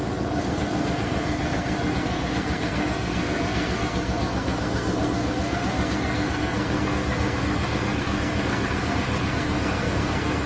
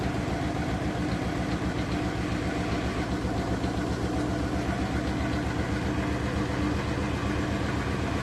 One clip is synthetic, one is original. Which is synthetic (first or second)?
first